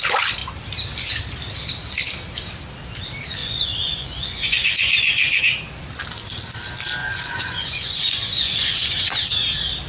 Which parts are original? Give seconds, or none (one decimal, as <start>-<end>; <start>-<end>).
0.0-3.4; 5.4-7.0; 9.3-9.9